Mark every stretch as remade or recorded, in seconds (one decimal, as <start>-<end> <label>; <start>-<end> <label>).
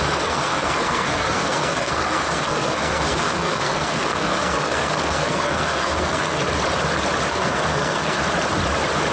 0.0-6.4 remade; 6.4-7.3 recorded; 7.3-8.2 remade; 8.2-9.1 recorded